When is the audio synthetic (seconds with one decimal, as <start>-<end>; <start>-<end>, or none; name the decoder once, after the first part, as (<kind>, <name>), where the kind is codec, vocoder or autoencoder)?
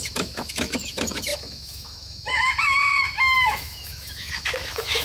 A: 0.0-5.0 (autoencoder, DAC-VAE)